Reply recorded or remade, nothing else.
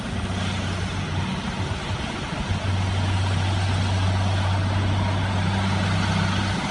recorded